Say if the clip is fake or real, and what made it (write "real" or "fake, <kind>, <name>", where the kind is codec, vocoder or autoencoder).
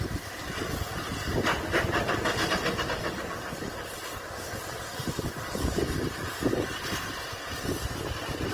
real